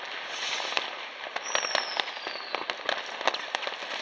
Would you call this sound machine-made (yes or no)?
no